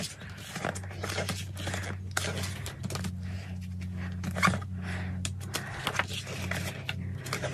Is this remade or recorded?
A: recorded